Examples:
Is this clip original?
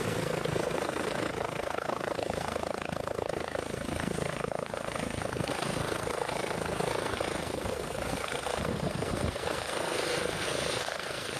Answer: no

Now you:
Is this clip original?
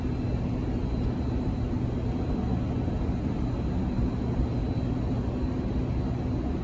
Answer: yes